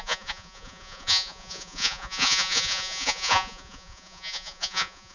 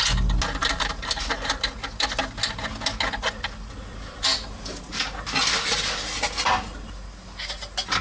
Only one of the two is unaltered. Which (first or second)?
second